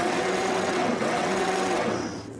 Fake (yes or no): yes